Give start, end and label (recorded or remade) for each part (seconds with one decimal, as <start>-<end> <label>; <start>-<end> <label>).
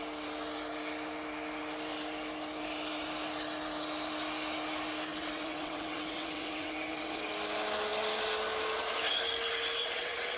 0.0-5.1 recorded; 5.1-7.3 remade; 7.3-9.8 recorded; 9.8-10.4 remade